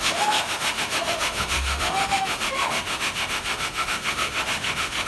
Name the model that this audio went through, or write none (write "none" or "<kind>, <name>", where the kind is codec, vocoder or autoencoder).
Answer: autoencoder, DAC-VAE